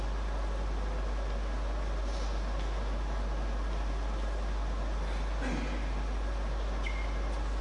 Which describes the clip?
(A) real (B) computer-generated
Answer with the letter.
A